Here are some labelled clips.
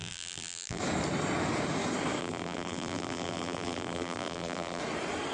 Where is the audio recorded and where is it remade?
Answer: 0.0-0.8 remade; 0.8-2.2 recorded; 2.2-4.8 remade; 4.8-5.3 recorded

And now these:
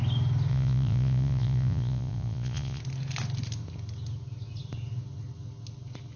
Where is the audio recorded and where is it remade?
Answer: 0.0-0.5 recorded; 0.5-2.8 remade; 2.8-6.2 recorded